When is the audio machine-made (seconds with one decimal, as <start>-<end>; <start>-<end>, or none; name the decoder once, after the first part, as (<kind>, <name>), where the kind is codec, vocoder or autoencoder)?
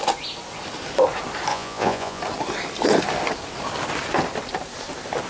1.5-2.2 (vocoder, Vocos)